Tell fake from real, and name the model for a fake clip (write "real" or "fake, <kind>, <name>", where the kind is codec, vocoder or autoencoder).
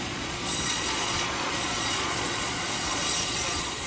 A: fake, vocoder, Vocos